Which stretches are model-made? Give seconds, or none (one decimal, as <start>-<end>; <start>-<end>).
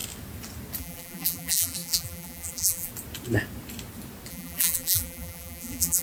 0.8-2.9; 4.3-6.0